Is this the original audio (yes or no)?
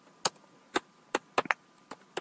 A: yes